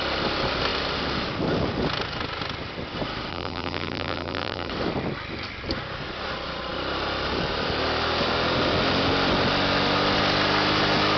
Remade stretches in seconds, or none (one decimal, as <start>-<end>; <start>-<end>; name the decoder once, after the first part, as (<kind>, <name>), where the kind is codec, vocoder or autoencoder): 3.3-4.7 (vocoder, BigVGAN v2)